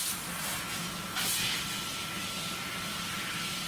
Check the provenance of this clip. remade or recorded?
recorded